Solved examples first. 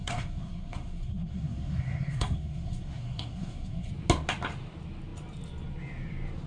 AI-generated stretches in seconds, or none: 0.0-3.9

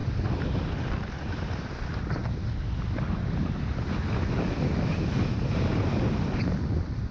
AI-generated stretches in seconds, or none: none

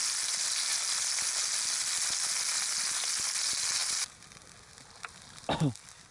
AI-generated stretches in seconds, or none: none

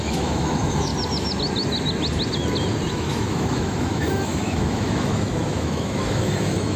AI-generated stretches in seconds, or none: 0.0-0.9; 2.9-6.8

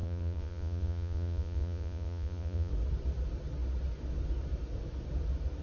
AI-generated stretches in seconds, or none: 0.0-2.7

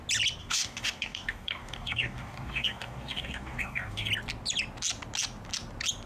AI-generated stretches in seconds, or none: 0.4-4.1

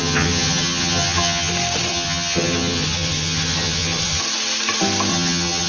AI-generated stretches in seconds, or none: 0.0-1.5; 1.9-4.2; 5.1-5.7

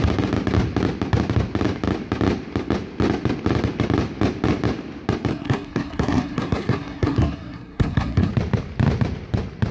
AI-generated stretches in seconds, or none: 5.3-8.3